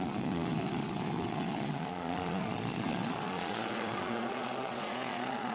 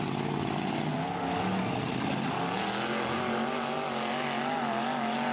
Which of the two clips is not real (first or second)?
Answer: first